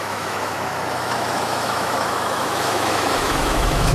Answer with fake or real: fake